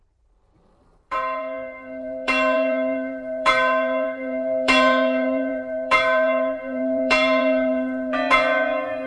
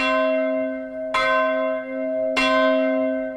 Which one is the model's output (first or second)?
first